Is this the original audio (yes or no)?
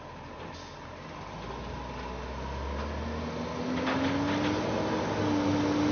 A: yes